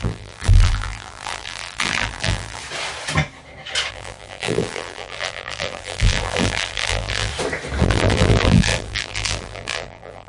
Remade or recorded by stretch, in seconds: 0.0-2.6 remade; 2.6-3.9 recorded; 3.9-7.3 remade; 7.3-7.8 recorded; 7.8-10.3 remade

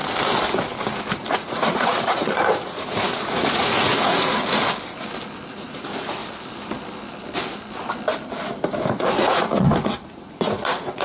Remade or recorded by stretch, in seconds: 0.0-1.3 recorded; 1.3-4.4 remade; 4.4-5.5 recorded; 5.5-6.2 remade; 6.2-8.9 recorded; 8.9-11.0 remade

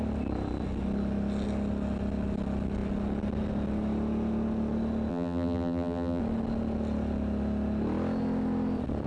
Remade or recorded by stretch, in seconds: 0.0-5.1 recorded; 5.1-6.2 remade; 6.2-9.1 recorded

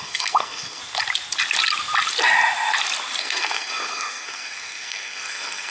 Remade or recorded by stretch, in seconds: 0.0-0.8 remade; 0.8-3.2 recorded; 3.2-5.7 remade